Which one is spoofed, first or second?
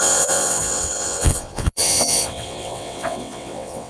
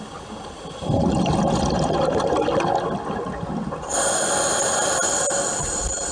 first